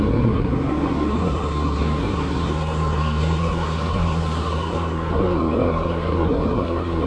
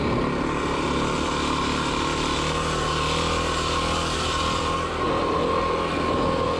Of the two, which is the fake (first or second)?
first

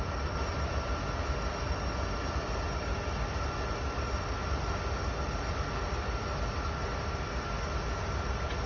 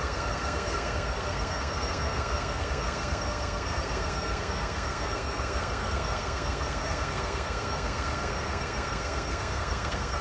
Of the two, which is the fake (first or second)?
second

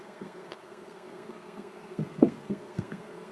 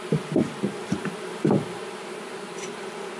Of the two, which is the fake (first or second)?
first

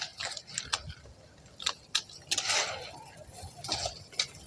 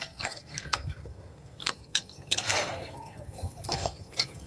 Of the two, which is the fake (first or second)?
second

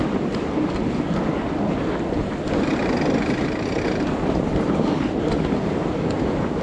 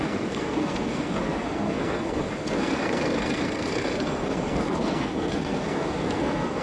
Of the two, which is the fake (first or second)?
second